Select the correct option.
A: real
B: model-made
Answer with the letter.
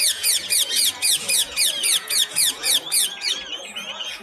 B